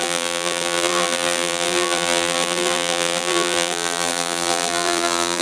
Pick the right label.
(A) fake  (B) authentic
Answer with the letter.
A